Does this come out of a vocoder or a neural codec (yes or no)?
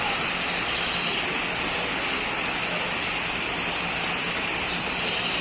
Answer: no